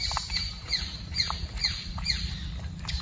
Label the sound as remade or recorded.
remade